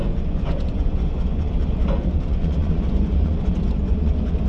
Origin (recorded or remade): remade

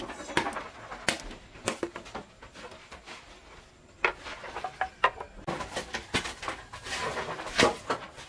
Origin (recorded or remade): recorded